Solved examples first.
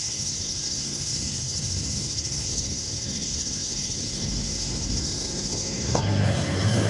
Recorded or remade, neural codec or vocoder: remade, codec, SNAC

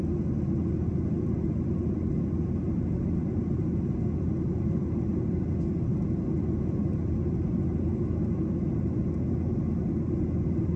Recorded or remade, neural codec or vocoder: recorded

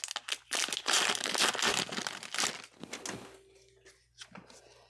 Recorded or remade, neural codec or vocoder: recorded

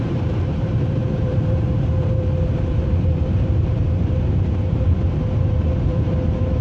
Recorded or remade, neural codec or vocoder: remade, vocoder, BigVGAN v2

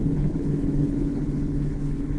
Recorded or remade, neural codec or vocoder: remade, codec, HILCodec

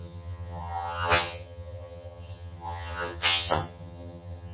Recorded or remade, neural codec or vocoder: remade, vocoder, HiFi-GAN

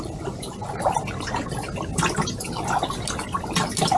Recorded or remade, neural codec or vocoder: recorded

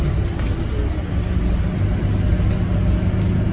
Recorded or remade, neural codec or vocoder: recorded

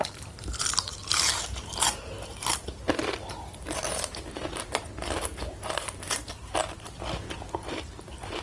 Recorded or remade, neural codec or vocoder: remade, vocoder, BigVGAN v2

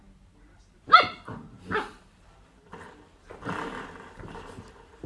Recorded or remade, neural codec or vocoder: remade, vocoder, BigVGAN v2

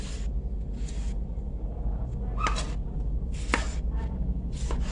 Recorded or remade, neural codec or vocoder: recorded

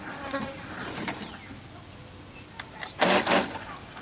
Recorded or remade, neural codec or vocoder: recorded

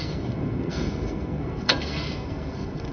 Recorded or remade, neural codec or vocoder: remade, codec, SNAC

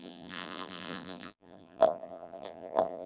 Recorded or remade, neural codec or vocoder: remade, vocoder, BigVGAN v2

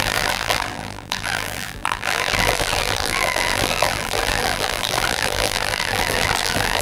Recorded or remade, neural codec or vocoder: remade, vocoder, BigVGAN v2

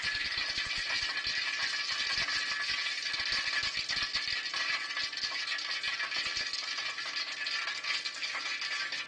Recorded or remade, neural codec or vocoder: recorded